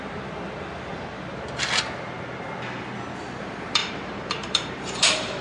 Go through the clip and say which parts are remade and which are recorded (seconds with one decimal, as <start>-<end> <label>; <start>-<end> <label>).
0.0-0.9 remade; 0.9-3.4 recorded; 3.4-5.4 remade

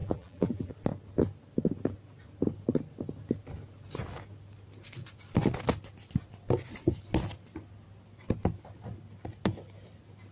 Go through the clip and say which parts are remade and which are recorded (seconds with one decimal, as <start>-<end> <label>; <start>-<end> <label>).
0.0-0.7 remade; 0.7-10.3 recorded

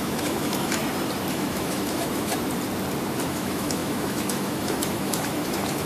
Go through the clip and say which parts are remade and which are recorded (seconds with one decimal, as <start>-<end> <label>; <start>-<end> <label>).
0.0-0.8 remade; 0.8-1.3 recorded; 1.3-2.3 remade; 2.3-3.3 recorded; 3.3-5.9 remade

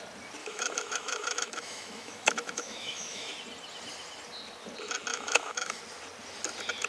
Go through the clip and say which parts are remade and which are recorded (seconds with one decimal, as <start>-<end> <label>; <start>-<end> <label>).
0.0-0.4 recorded; 0.4-3.3 remade; 3.3-5.1 recorded; 5.1-5.8 remade; 5.8-6.9 recorded